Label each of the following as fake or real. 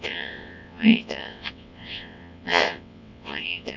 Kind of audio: fake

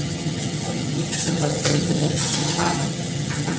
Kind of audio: fake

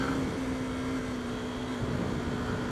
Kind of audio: real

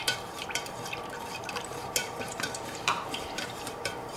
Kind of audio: fake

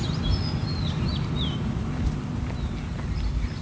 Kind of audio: real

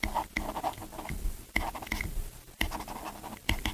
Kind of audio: real